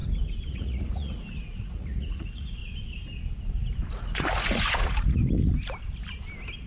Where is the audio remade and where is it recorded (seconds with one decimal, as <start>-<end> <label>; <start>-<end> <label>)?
0.0-0.5 recorded; 0.5-2.6 remade; 2.6-3.9 recorded; 3.9-5.2 remade; 5.2-6.7 recorded